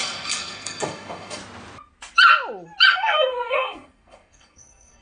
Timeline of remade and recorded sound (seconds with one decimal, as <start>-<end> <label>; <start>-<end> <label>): 0.0-1.4 remade; 1.4-2.9 recorded; 2.9-5.0 remade